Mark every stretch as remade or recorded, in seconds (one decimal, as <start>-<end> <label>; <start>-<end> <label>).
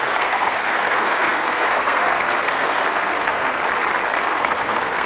0.0-3.6 remade; 3.6-4.2 recorded; 4.2-5.1 remade